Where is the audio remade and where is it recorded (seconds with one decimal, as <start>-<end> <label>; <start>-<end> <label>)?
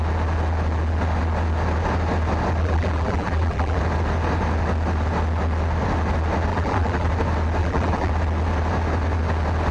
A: 0.0-2.6 recorded; 2.6-3.8 remade; 3.8-6.5 recorded; 6.5-7.1 remade; 7.1-7.6 recorded; 7.6-8.1 remade; 8.1-9.7 recorded